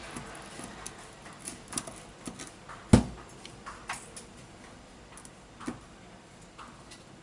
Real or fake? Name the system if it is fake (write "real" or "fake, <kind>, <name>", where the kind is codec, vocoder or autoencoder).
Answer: real